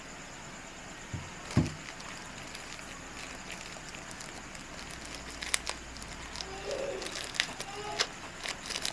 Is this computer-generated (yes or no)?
no